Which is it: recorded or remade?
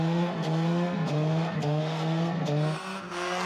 remade